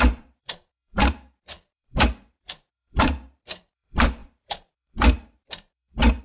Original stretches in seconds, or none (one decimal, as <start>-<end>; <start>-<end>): none